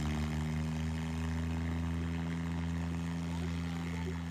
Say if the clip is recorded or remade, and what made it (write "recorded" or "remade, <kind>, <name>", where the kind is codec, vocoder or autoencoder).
recorded